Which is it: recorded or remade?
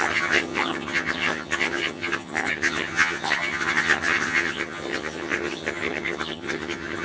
remade